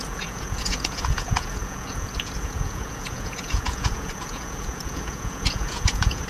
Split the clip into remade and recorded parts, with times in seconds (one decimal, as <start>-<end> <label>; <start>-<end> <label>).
0.0-6.3 remade